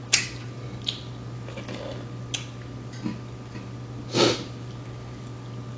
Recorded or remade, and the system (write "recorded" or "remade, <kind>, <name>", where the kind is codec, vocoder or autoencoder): recorded